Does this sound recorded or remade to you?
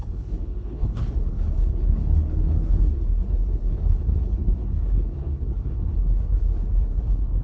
remade